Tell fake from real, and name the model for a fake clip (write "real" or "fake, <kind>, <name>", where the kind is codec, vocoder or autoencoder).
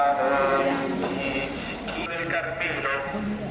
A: real